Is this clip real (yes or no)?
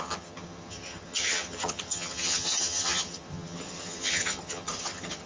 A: no